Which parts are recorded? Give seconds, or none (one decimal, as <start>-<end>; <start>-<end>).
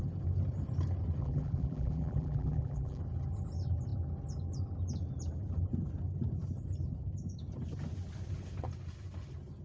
0.0-1.2; 3.0-9.6